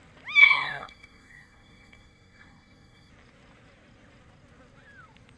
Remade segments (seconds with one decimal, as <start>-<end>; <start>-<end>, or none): 0.4-3.1